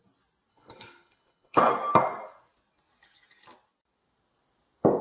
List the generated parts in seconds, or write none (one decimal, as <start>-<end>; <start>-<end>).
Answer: 0.5-1.7